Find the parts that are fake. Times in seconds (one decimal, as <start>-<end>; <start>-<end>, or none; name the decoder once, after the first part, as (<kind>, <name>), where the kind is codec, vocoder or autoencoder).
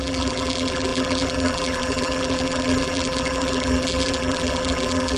0.0-5.2 (vocoder, BigVGAN v2)